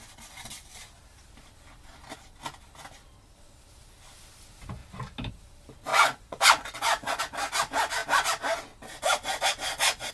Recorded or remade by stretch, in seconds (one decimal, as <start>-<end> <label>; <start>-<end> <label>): 0.0-5.9 recorded; 5.9-7.2 remade; 7.2-10.1 recorded